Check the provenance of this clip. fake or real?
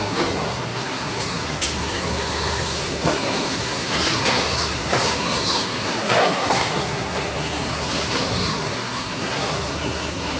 fake